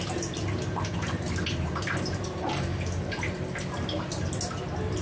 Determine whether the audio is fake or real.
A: real